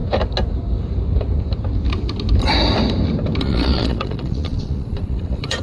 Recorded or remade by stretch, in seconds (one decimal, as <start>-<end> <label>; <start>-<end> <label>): 0.0-3.4 recorded; 3.4-5.6 remade